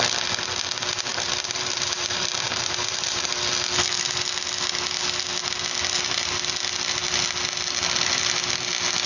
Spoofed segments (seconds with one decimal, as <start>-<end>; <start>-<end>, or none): 1.1-3.3